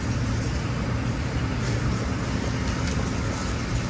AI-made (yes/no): no